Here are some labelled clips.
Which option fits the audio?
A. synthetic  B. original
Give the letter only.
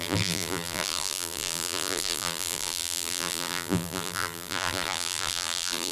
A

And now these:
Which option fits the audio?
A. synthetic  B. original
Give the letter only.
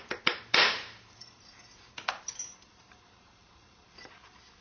A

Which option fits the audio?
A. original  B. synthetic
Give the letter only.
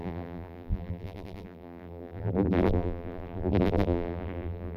B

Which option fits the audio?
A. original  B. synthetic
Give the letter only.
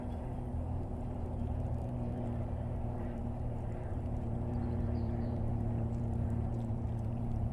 B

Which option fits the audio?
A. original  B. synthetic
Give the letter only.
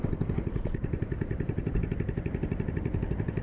A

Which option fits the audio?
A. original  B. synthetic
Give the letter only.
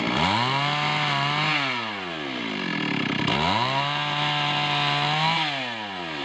A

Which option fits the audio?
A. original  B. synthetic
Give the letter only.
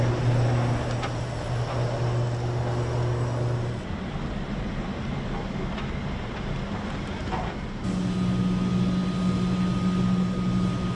A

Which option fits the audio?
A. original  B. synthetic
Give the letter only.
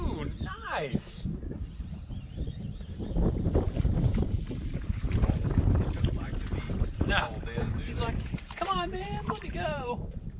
B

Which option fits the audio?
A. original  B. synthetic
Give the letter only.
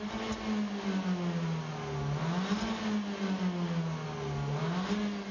A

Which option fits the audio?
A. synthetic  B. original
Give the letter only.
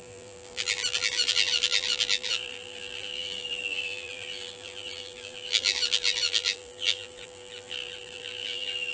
A